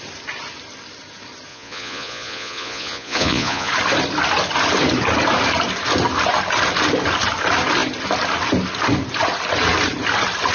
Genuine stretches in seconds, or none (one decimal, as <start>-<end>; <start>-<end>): 0.0-1.5; 3.7-10.5